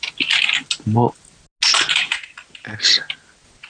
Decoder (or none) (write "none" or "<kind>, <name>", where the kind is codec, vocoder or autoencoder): none